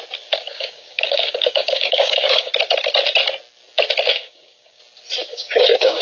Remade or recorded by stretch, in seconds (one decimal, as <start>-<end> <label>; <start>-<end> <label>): 0.0-0.5 recorded; 0.5-2.5 remade; 2.5-4.1 recorded; 4.1-4.8 remade; 4.8-5.3 recorded; 5.3-6.0 remade